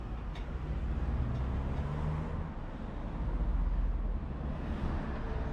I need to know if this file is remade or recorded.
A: recorded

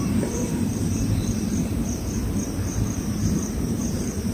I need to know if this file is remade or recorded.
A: remade